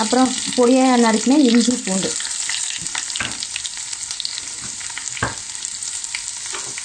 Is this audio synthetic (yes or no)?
no